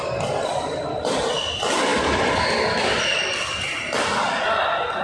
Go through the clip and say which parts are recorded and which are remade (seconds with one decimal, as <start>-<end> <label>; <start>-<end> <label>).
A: 0.0-5.0 recorded